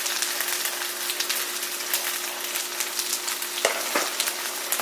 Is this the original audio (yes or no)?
yes